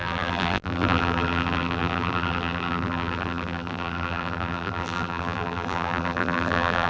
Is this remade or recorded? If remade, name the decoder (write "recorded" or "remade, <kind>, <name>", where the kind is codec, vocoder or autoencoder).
remade, vocoder, BigVGAN v2